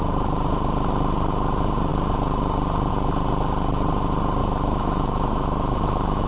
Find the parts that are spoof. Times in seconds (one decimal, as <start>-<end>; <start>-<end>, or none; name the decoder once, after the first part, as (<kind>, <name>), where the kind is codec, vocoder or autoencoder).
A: 4.4-6.3 (autoencoder, DAC-VAE)